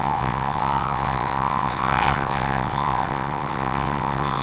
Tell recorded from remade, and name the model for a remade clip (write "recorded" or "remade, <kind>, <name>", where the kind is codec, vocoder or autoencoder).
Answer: remade, vocoder, WaveNeXt